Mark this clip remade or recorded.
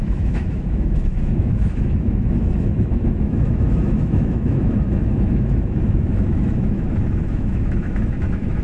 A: remade